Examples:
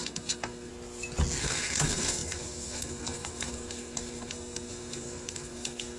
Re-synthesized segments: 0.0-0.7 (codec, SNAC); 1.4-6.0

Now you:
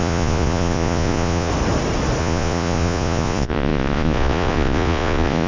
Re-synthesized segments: 0.0-1.5 (vocoder, Vocos); 2.2-5.5

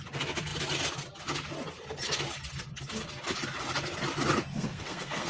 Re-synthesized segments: 4.5-5.3 (codec, SNAC)